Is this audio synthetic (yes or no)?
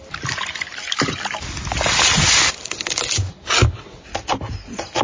no